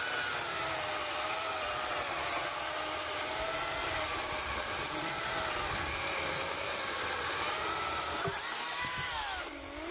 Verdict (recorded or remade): recorded